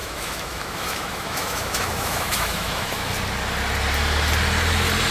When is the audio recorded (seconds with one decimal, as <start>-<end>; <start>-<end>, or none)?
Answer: 3.1-5.1